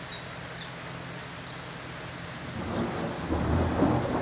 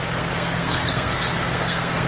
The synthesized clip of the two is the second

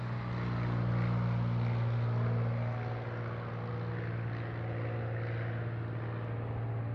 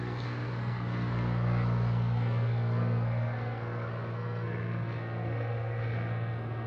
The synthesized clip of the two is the second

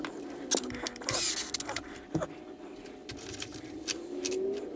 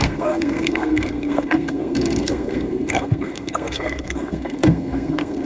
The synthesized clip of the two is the second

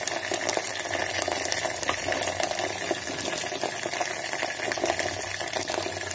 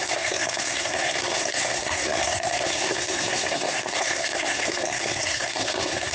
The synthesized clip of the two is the second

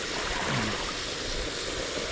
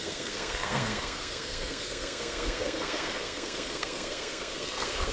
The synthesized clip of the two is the second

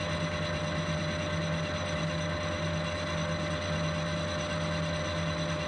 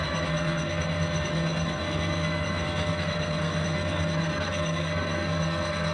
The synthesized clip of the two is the second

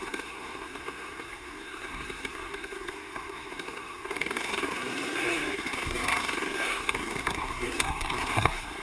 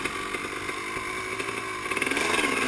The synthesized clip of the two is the first